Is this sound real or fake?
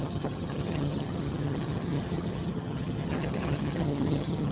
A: fake